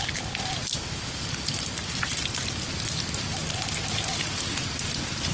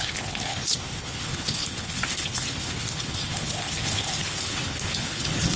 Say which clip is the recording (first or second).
first